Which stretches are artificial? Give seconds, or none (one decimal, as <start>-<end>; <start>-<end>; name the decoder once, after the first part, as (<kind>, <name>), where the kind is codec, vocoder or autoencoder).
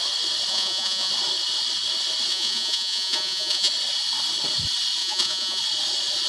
0.5-1.1 (vocoder, Vocos); 2.3-3.7; 5.0-5.6